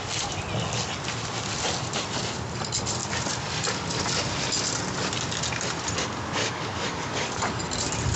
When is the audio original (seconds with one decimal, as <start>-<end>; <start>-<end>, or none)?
0.0-6.4; 7.6-8.2

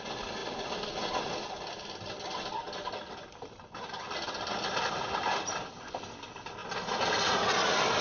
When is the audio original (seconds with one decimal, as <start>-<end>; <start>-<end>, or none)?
0.0-8.0